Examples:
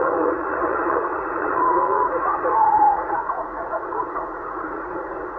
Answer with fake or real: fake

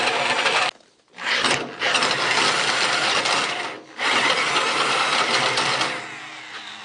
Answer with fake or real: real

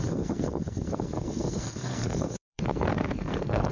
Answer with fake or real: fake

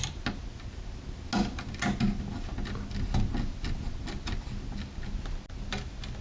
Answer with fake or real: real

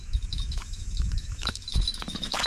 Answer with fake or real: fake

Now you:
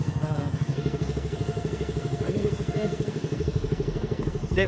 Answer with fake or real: fake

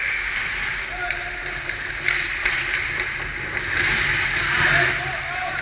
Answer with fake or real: real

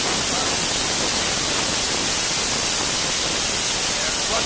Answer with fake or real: real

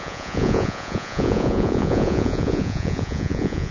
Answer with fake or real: fake